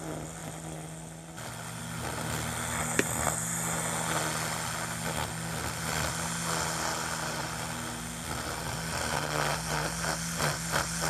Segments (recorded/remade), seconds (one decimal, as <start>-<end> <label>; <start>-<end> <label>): 0.0-11.1 recorded